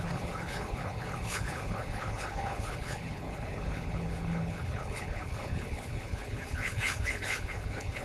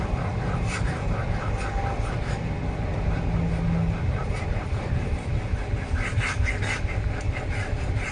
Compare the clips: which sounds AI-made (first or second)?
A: first